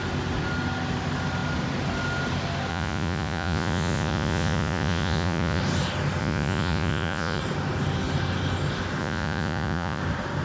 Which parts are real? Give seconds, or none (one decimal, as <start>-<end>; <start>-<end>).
0.0-2.7; 5.6-6.2; 7.4-9.0; 10.0-10.4